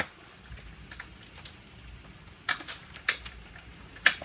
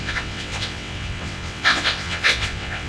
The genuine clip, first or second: first